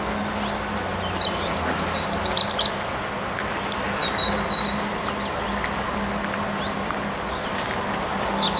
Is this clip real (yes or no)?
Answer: yes